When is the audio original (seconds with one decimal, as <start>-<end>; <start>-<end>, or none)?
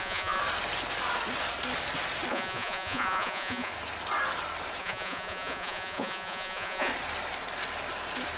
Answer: 0.4-2.3; 3.7-4.8; 6.9-8.4